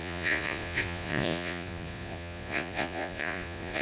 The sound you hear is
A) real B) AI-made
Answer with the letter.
B